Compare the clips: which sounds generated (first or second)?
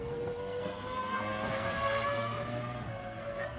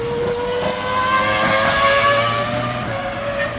first